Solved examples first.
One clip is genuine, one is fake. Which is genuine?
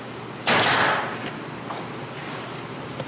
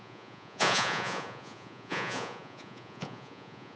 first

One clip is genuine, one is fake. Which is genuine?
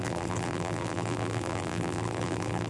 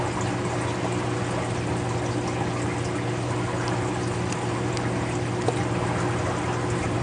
second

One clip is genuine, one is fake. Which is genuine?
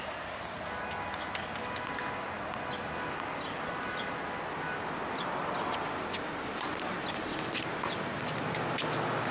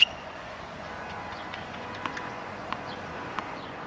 first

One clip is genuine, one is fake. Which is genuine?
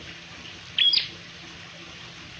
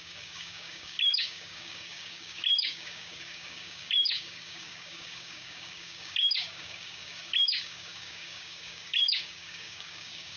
first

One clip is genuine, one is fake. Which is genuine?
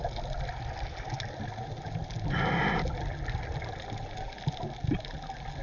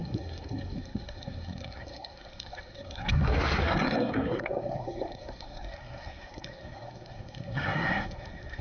first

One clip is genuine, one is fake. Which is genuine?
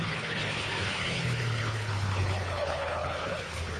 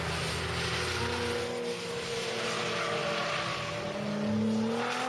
second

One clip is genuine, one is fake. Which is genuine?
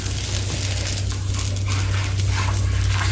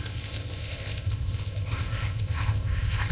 first